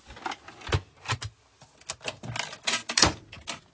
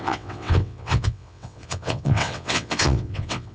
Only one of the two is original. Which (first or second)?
first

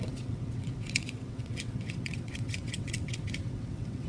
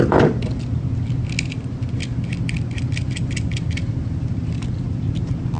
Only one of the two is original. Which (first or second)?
second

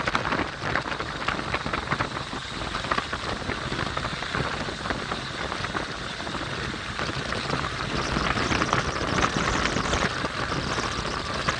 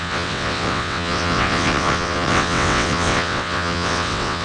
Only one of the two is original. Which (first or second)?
first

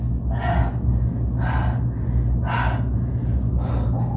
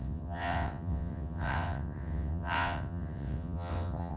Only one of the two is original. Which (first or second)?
first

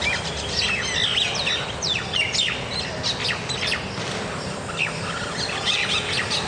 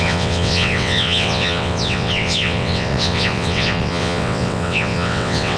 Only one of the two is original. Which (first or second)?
first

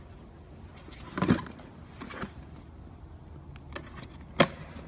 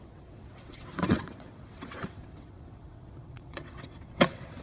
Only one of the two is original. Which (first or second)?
first